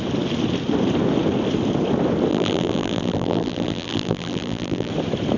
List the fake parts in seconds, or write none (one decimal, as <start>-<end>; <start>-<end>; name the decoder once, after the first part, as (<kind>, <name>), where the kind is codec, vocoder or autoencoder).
2.3-4.9 (vocoder, BigVGAN v2)